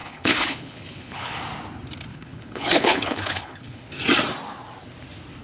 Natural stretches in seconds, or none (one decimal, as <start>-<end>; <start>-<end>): 1.4-2.1; 3.9-5.4